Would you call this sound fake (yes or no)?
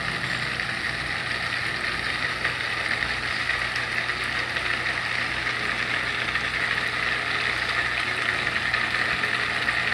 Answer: no